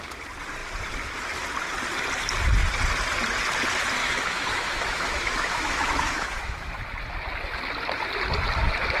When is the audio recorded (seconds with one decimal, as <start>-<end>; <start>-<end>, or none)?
0.0-4.0; 6.7-9.0